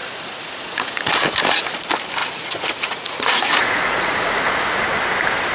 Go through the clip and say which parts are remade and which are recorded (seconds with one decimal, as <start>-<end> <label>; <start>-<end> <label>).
0.0-1.1 remade; 1.1-2.2 recorded; 2.2-4.8 remade; 4.8-5.5 recorded